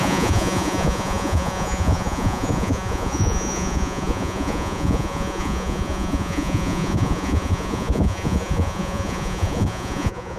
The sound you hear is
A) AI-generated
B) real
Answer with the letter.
A